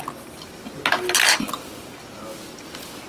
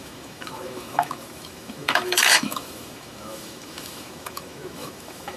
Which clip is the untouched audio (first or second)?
first